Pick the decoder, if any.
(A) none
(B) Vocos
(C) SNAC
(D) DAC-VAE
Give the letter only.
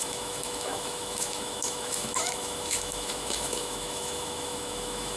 D